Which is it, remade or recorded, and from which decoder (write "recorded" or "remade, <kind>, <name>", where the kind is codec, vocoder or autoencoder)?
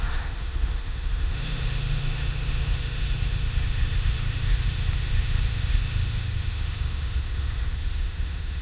remade, autoencoder, DAC-VAE